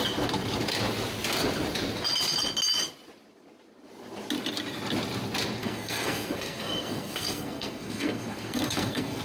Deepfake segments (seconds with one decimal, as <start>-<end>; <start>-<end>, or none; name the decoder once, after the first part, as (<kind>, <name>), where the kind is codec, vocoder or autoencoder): 5.6-9.2 (codec, SNAC)